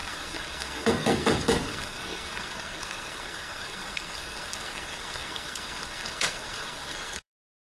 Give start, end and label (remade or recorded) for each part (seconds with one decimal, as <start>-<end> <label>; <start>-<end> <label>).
0.0-7.6 remade